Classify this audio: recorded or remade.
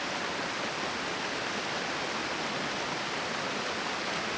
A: recorded